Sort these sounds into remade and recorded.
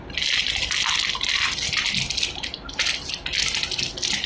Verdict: recorded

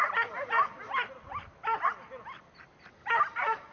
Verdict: recorded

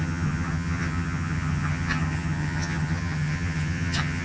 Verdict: remade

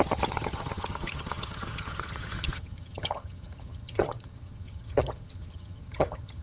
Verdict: remade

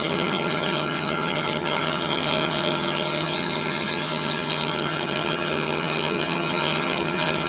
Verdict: remade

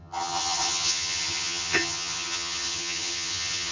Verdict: remade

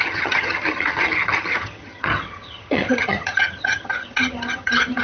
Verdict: remade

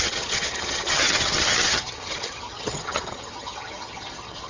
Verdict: remade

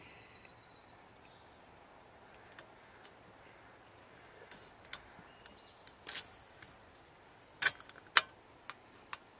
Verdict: recorded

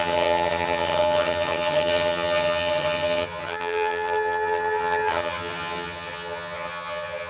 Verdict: remade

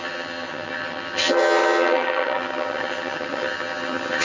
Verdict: remade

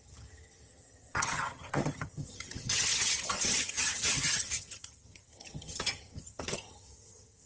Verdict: remade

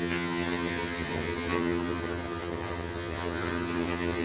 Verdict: remade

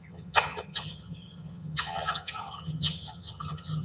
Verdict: remade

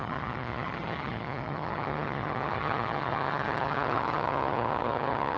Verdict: remade